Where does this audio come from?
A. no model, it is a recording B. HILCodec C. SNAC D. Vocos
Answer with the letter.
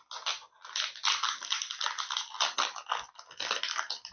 A